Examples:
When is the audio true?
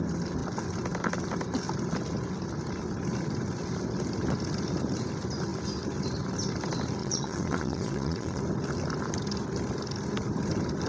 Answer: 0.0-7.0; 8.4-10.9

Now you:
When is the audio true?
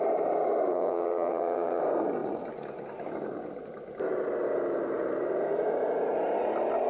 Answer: 0.0-0.7; 1.8-6.9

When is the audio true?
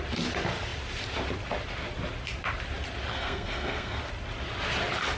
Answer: 0.0-3.1; 4.0-5.2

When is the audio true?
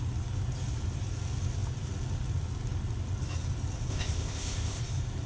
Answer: 0.0-3.9; 4.8-5.3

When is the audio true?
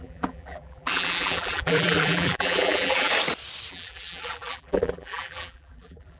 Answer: 3.1-3.7